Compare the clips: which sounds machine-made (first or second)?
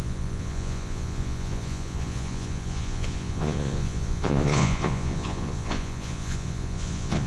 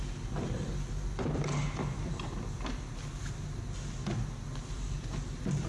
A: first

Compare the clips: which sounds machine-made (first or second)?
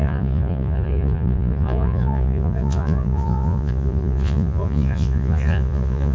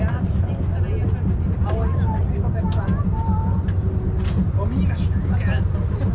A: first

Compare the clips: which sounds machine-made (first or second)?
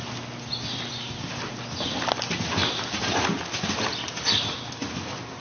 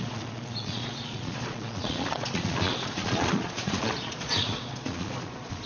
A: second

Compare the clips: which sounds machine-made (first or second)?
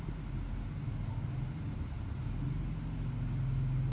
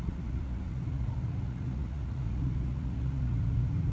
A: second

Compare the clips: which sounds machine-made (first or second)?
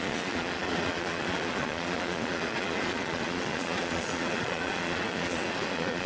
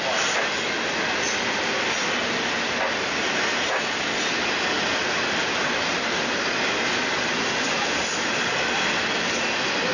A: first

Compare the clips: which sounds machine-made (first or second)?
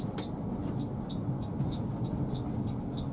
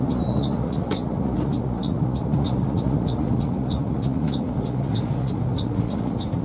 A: second